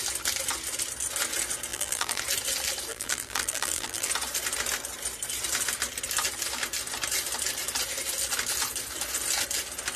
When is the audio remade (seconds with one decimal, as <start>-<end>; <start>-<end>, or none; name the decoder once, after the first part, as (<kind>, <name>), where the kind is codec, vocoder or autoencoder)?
1.7-2.2 (vocoder, BigVGAN v2); 2.9-4.1